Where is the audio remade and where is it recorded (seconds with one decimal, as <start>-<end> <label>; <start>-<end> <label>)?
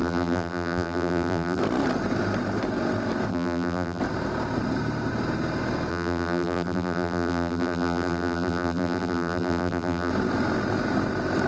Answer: 0.0-1.6 remade; 1.6-3.3 recorded; 3.3-4.0 remade; 4.0-5.9 recorded; 5.9-10.1 remade; 10.1-11.5 recorded